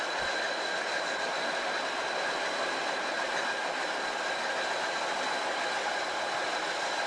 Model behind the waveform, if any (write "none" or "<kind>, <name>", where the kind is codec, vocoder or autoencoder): none